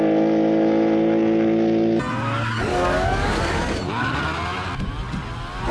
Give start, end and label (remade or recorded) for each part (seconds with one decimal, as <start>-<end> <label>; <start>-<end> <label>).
0.0-2.7 recorded; 2.7-3.6 remade; 3.6-5.7 recorded